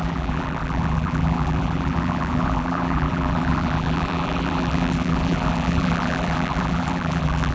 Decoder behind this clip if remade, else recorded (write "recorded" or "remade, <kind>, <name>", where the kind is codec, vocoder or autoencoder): remade, vocoder, BigVGAN v2